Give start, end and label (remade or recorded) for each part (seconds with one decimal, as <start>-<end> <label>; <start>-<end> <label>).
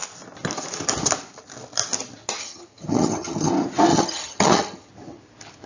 0.0-2.4 recorded; 2.4-3.5 remade; 3.5-3.9 recorded; 3.9-4.9 remade; 4.9-5.7 recorded